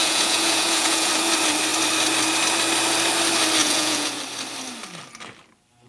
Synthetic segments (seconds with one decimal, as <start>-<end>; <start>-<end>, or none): 0.0-1.1; 3.6-4.2